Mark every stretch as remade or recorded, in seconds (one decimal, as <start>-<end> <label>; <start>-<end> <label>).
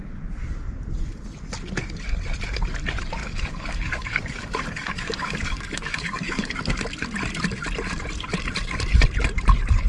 0.0-3.2 recorded; 3.2-6.6 remade; 6.6-9.9 recorded